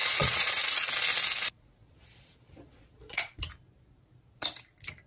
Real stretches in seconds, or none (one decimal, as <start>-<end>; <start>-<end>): 0.9-1.8; 3.4-5.1